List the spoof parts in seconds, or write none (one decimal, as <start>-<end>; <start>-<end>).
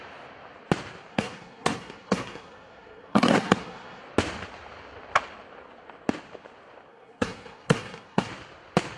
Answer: 1.1-4.0; 6.9-8.3